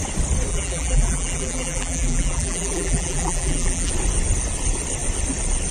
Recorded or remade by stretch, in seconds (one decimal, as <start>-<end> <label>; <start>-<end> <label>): 0.0-0.5 recorded; 0.5-3.9 remade; 3.9-5.7 recorded